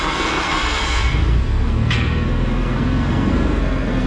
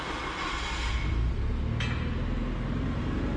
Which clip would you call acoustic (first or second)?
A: second